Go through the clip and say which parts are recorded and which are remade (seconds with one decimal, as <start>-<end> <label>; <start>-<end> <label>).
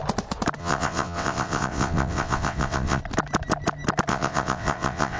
0.0-0.6 recorded; 0.6-3.0 remade; 3.0-4.1 recorded; 4.1-5.2 remade